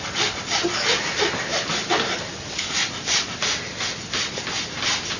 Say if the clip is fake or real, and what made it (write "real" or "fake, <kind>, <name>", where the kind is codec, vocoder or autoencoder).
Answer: real